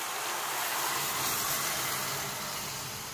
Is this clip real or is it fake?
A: real